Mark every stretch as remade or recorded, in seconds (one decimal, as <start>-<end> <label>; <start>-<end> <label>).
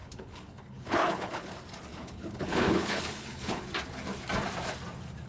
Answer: 0.0-1.5 remade; 1.5-1.9 recorded; 1.9-3.7 remade; 3.7-5.3 recorded